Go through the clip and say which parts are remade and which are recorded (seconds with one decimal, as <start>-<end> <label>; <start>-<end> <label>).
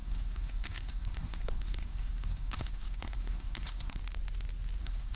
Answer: 0.0-4.0 remade; 4.0-4.8 recorded; 4.8-5.2 remade